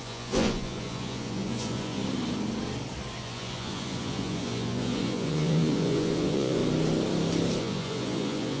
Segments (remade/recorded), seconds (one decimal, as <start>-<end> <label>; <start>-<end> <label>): 0.0-2.0 remade; 2.0-3.2 recorded; 3.2-6.6 remade; 6.6-7.6 recorded; 7.6-8.6 remade